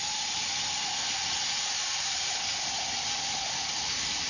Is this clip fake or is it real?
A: real